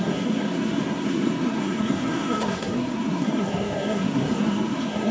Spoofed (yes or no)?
yes